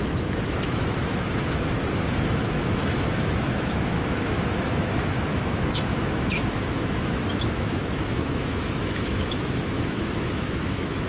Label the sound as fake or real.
fake